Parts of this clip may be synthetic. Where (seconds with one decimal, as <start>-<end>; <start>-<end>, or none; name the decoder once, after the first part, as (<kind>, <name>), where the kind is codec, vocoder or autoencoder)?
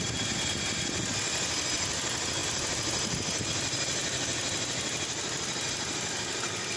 2.4-3.4 (vocoder, BigVGAN v2)